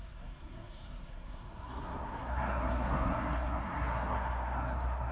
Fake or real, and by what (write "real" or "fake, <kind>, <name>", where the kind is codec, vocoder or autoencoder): fake, codec, SNAC